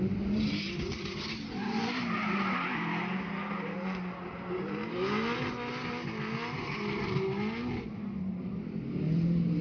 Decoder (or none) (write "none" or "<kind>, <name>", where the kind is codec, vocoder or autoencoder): none